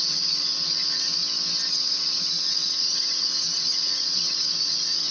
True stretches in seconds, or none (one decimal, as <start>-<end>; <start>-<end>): 1.2-1.8